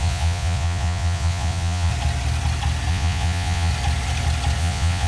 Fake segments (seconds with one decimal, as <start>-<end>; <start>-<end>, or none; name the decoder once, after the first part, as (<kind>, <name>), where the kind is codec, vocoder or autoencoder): 0.0-1.9 (vocoder, Vocos); 2.9-3.7; 4.6-5.1